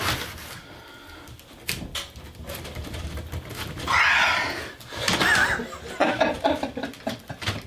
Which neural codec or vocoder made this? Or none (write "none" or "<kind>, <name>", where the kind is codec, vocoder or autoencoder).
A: none